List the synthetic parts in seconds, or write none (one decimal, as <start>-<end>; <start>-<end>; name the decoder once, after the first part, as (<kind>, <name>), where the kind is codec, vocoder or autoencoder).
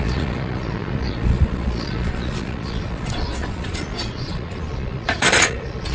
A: 0.0-5.9 (vocoder, Vocos)